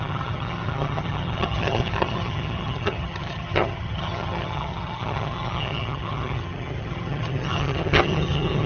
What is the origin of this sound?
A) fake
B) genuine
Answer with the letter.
A